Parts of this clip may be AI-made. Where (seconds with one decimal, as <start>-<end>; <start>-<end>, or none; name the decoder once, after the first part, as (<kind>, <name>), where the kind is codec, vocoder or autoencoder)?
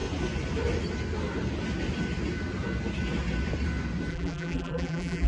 4.1-5.3 (vocoder, BigVGAN v2)